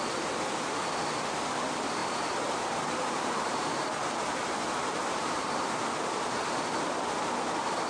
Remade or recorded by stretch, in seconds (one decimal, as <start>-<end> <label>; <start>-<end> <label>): 0.0-2.0 recorded; 2.0-5.7 remade; 5.7-7.9 recorded